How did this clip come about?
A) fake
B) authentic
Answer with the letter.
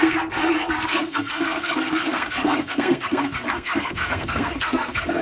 A